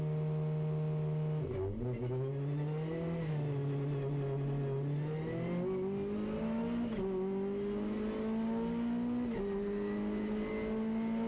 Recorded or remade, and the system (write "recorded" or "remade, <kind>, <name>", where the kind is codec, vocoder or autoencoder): recorded